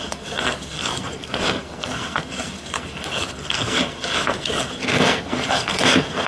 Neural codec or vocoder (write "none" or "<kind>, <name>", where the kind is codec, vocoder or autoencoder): codec, SNAC